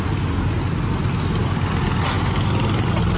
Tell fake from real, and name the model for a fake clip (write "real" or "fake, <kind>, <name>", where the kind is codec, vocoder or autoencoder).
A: real